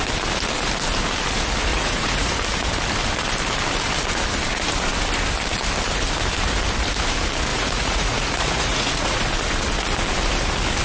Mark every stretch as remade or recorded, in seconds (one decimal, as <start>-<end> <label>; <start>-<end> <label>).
0.0-1.7 recorded; 1.7-2.3 remade; 2.3-7.5 recorded; 7.5-9.2 remade; 9.2-10.8 recorded